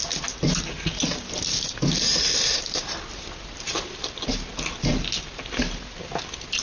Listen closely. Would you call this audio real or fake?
real